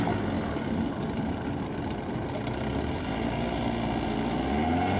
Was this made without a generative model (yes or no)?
yes